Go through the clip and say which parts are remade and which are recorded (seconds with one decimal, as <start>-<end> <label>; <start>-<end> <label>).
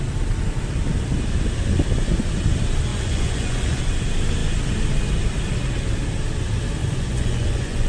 0.0-2.9 recorded; 2.9-3.8 remade; 3.8-6.8 recorded; 6.8-7.9 remade